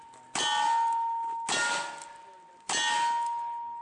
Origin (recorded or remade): recorded